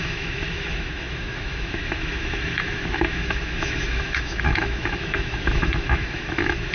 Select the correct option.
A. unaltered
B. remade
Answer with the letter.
B